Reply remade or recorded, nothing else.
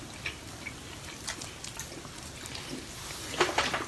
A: recorded